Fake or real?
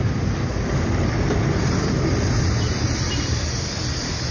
real